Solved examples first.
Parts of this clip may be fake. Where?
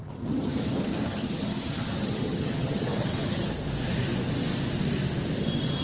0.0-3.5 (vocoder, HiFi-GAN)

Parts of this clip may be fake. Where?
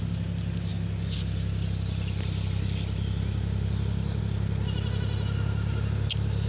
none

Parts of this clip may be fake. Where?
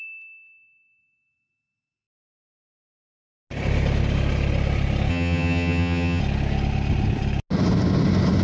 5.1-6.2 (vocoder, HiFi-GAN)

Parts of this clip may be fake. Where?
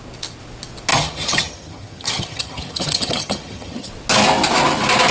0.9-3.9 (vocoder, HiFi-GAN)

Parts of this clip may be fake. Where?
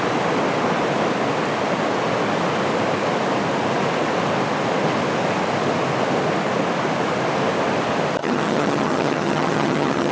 8.2-10.1 (vocoder, HiFi-GAN)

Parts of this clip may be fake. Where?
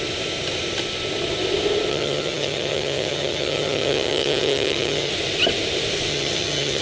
1.9-5.1 (vocoder, HiFi-GAN); 6.1-6.8